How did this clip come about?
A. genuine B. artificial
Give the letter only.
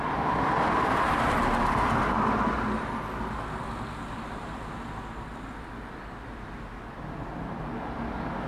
A